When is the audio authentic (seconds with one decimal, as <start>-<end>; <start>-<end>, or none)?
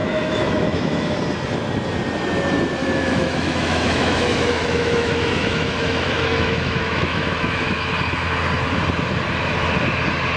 1.2-2.8; 7.9-10.4